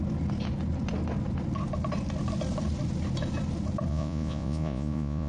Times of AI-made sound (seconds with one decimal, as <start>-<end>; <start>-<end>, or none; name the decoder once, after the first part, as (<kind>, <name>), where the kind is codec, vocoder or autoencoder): 3.9-5.3 (vocoder, Vocos)